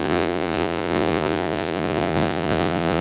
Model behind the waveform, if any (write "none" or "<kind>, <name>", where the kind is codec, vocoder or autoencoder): vocoder, Vocos